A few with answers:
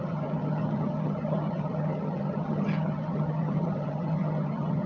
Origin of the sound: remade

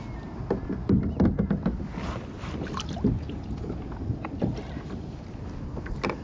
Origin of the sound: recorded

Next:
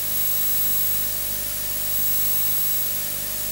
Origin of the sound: recorded